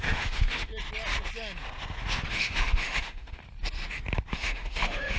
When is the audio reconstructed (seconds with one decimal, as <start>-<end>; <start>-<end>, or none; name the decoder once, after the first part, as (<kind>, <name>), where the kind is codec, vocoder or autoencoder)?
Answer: 0.0-0.7 (autoencoder, DAC-VAE); 2.3-3.4; 4.3-5.2